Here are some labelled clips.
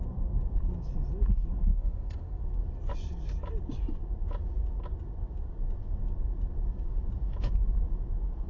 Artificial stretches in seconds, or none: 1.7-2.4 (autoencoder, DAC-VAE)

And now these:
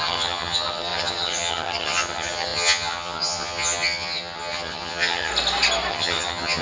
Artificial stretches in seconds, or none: 0.0-5.3 (vocoder, HiFi-GAN); 5.9-6.6

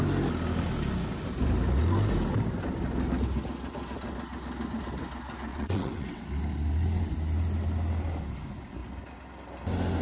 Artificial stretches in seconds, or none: 5.5-6.2 (vocoder, WaveNeXt)

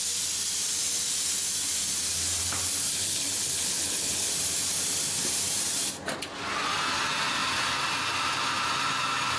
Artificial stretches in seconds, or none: 2.9-4.3 (codec, HILCodec)

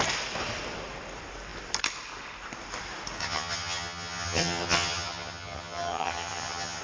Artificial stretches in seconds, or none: 3.2-6.8 (vocoder, HiFi-GAN)

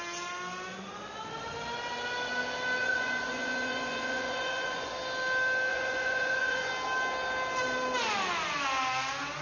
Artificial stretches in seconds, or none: 2.8-4.9 (vocoder, Vocos); 5.7-6.7

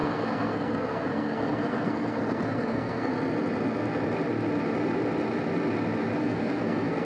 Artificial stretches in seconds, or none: 0.0-3.1 (codec, SNAC); 6.2-7.0